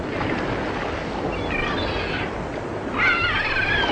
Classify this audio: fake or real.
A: real